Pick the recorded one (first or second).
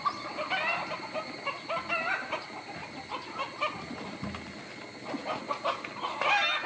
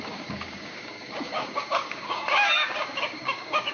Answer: first